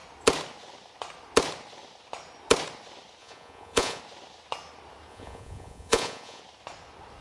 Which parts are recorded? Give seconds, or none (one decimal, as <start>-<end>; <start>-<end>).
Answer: 0.0-3.2; 4.0-5.1; 6.4-7.2